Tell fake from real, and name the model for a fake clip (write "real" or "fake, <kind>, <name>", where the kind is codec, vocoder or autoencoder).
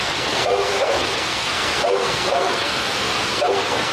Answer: fake, codec, SNAC